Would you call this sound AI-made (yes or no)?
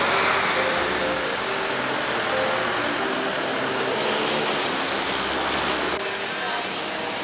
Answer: no